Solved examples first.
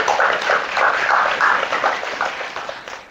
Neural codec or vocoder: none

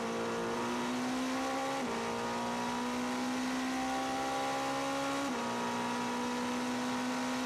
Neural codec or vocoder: none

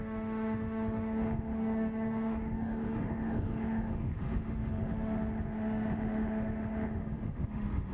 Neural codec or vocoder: autoencoder, DAC-VAE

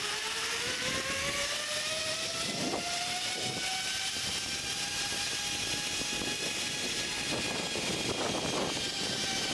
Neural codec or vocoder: none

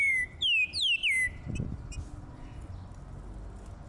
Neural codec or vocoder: none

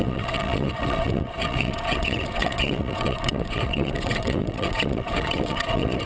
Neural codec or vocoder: vocoder, WaveNeXt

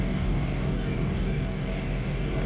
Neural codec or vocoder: codec, DAC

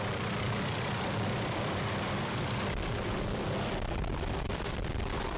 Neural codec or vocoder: vocoder, BigVGAN v2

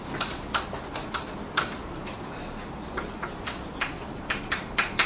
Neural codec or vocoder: none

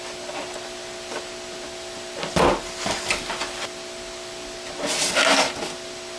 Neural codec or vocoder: none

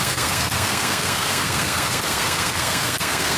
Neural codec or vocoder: codec, SNAC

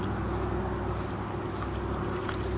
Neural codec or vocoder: none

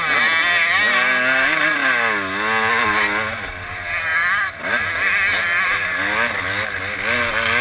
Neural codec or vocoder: none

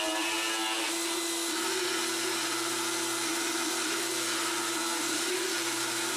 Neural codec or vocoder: none